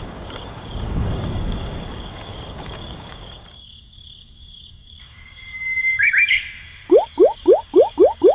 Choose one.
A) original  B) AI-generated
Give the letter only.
B